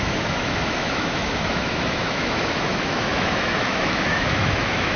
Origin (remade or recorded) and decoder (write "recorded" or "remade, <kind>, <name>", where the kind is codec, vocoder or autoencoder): remade, autoencoder, DAC-VAE